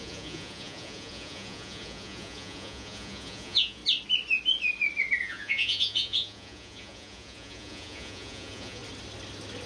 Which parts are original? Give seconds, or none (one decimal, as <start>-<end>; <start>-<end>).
3.8-5.2; 8.8-9.7